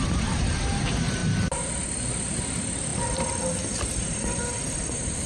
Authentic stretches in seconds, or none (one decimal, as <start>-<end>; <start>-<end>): 0.0-5.3